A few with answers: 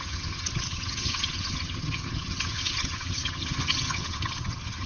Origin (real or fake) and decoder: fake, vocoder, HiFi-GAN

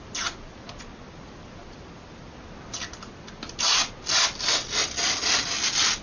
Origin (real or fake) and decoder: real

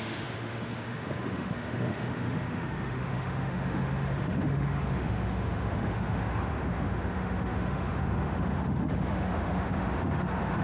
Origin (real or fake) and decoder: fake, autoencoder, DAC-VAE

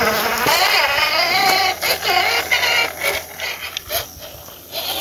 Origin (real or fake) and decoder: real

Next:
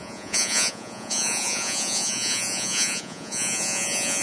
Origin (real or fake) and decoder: fake, vocoder, Vocos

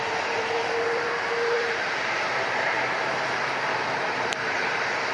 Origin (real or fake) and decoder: fake, vocoder, BigVGAN v2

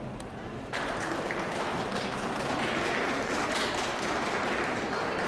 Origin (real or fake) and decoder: fake, vocoder, BigVGAN v2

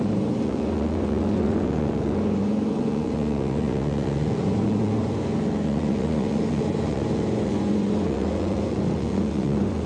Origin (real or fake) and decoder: fake, vocoder, Vocos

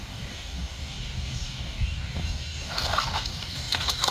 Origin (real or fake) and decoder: fake, codec, DAC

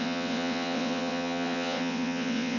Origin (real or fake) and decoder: fake, vocoder, WaveNeXt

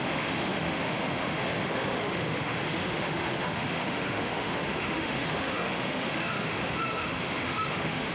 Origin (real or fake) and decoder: fake, autoencoder, DAC-VAE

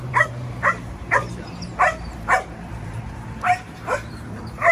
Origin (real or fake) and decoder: fake, vocoder, BigVGAN v2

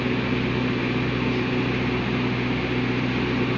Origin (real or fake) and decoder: real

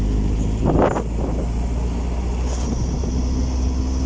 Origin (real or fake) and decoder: real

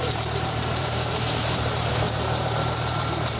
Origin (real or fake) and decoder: fake, vocoder, BigVGAN v2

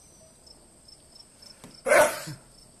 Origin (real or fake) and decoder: real